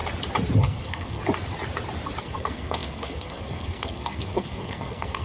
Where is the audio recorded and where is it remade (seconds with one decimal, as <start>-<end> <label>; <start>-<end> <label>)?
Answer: 0.0-0.6 recorded; 0.6-1.2 remade; 1.2-2.2 recorded; 2.2-5.2 remade